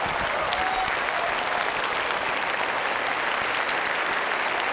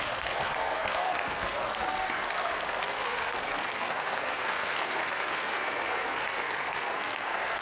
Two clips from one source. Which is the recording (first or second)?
first